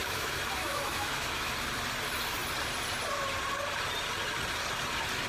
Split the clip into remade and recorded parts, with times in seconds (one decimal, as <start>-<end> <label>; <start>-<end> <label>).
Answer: 0.0-1.5 remade; 1.5-5.3 recorded